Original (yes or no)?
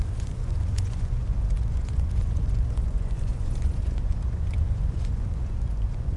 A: no